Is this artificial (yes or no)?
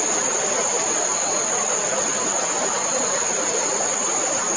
no